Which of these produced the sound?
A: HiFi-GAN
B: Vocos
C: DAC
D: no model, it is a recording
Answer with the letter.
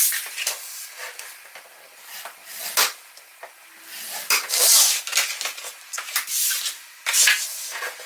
D